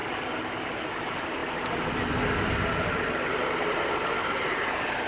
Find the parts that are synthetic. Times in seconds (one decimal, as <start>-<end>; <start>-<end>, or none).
none